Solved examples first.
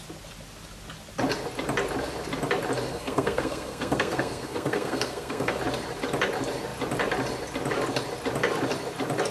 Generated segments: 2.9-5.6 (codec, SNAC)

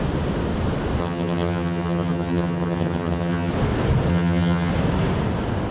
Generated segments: 1.0-3.5 (vocoder, HiFi-GAN); 4.1-4.7

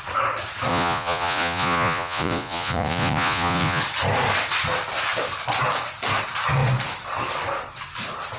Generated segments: 0.7-3.8 (vocoder, Vocos)

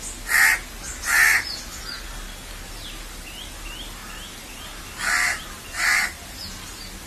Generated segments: none